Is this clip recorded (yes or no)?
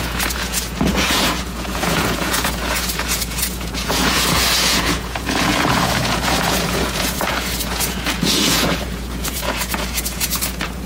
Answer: no